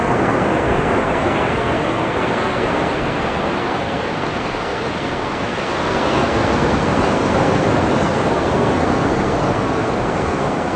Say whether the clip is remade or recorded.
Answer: remade